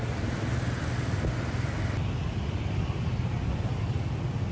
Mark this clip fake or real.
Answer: real